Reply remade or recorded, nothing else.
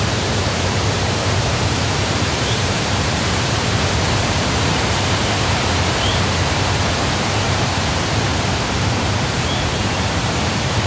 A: remade